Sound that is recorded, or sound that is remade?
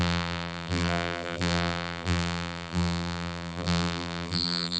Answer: remade